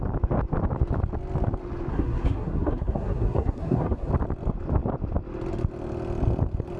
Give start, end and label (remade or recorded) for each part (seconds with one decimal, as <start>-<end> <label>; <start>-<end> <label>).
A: 0.0-1.9 recorded; 1.9-4.1 remade; 4.1-6.8 recorded